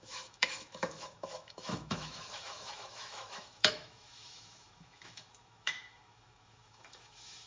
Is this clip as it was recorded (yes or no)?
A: no